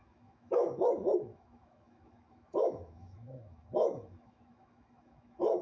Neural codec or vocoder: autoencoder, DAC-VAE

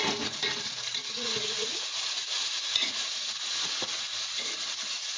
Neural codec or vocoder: vocoder, Vocos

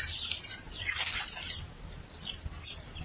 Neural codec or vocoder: none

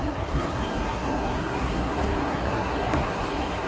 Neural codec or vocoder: codec, SNAC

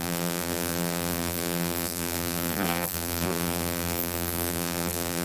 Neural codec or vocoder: vocoder, BigVGAN v2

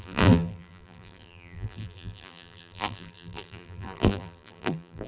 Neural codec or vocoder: vocoder, BigVGAN v2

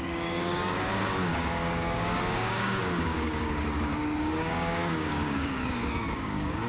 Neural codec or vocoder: codec, DAC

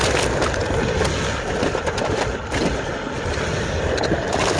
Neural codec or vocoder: none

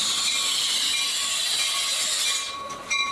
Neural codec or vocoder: none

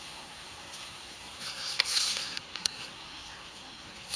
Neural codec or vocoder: codec, SNAC